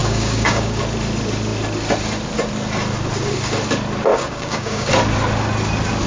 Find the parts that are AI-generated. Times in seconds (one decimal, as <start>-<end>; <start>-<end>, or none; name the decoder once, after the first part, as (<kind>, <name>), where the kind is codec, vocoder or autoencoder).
0.0-0.8 (codec, DAC); 4.1-4.9